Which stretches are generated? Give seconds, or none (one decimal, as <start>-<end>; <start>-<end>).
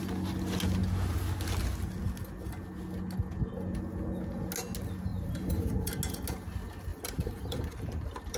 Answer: 5.1-5.9; 6.9-8.4